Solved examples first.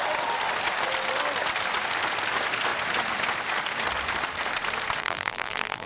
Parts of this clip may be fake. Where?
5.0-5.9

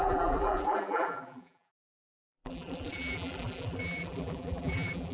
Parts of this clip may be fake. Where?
0.0-5.1